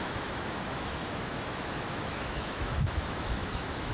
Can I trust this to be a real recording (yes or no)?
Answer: no